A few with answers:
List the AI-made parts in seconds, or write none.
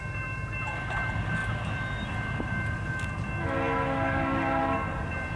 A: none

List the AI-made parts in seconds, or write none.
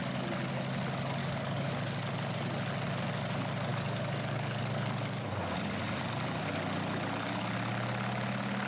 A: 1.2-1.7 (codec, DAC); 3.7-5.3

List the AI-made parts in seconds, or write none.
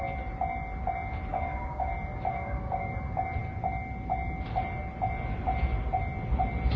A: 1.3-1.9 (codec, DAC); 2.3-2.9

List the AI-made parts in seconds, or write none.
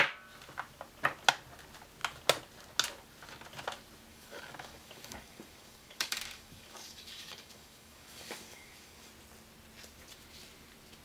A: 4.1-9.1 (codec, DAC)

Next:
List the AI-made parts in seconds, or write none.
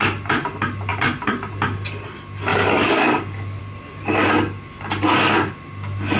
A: 2.5-3.6 (codec, DAC)